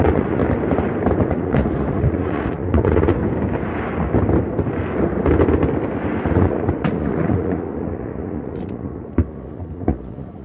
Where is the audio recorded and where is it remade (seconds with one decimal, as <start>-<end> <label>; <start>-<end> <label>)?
0.0-0.4 remade; 0.4-1.2 recorded; 1.2-3.2 remade; 3.2-6.3 recorded; 6.3-10.4 remade